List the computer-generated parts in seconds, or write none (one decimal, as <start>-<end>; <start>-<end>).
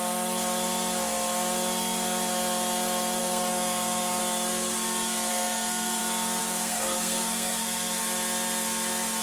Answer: 3.2-4.2; 5.3-6.0; 6.4-8.0